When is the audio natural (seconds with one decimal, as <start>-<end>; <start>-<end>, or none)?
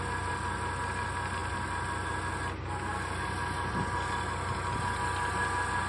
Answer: 0.0-5.9